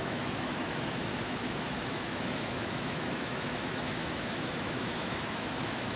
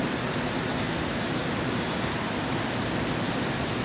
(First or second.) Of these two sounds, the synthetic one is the first